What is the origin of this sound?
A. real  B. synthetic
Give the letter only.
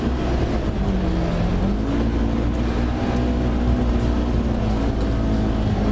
A